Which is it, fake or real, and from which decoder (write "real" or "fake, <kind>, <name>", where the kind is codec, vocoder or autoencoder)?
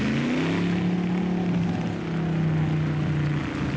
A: real